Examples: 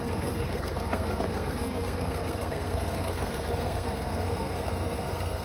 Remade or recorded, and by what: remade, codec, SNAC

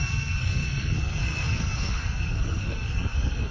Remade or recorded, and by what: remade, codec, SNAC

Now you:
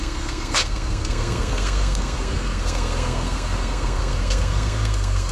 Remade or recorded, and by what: remade, codec, SNAC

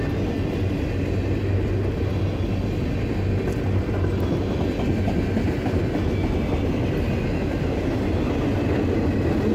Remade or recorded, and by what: recorded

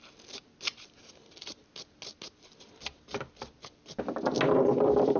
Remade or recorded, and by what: recorded